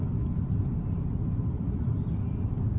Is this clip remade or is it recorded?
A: recorded